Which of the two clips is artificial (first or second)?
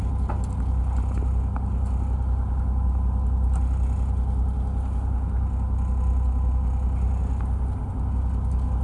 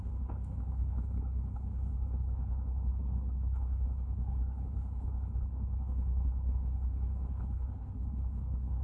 second